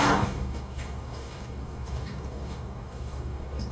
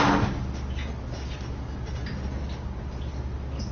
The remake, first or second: first